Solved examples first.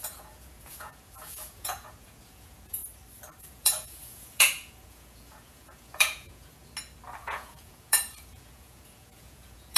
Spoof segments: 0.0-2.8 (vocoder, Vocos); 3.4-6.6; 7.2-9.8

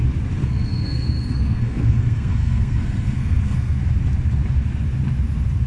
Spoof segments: 0.4-3.8 (codec, SNAC)

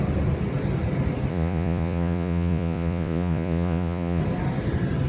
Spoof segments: 1.3-4.2 (vocoder, Vocos)

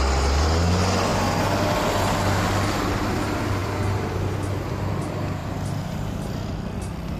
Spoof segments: 5.4-6.2 (vocoder, BigVGAN v2)

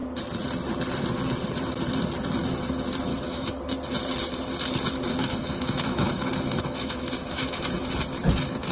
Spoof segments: 3.1-3.6 (autoencoder, DAC-VAE); 5.2-7.6

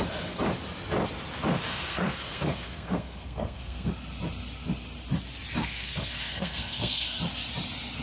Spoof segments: 1.7-3.9 (codec, SNAC); 5.6-7.2

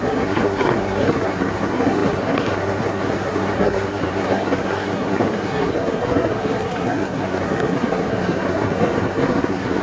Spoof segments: 0.0-9.8 (codec, SNAC)